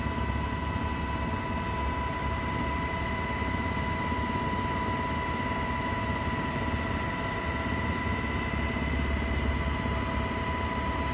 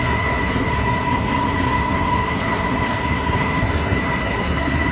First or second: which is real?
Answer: first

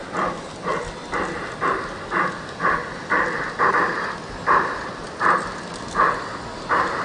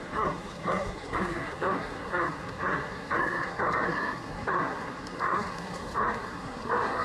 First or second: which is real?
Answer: first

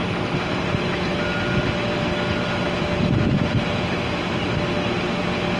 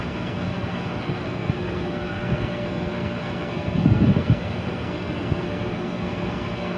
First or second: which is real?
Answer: first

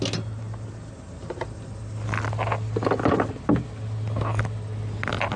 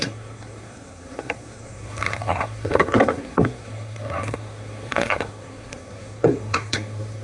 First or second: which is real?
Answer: first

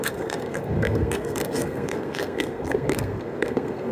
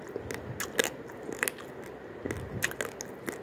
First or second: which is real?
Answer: second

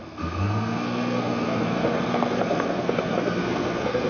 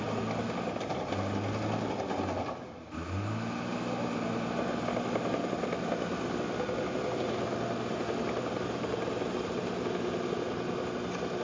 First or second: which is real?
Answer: second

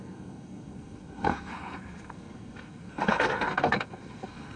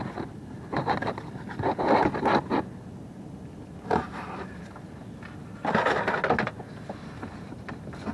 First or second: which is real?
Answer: second